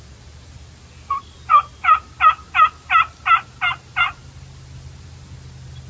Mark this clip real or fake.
real